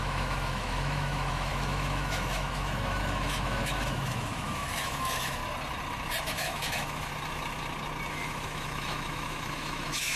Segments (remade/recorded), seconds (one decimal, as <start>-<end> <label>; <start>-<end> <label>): 0.0-5.4 remade; 5.4-6.2 recorded; 6.2-7.1 remade; 7.1-8.1 recorded; 8.1-10.2 remade